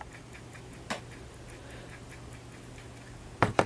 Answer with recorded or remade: recorded